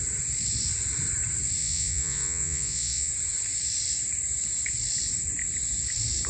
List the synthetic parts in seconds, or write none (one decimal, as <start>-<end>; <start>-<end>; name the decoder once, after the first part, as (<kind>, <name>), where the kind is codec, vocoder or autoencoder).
1.6-3.1 (vocoder, Vocos)